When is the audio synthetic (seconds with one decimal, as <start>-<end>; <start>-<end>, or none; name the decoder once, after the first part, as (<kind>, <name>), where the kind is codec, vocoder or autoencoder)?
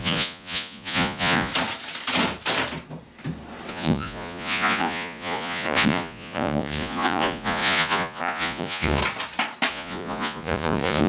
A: 0.0-1.5 (vocoder, Vocos); 3.7-9.0; 9.7-11.1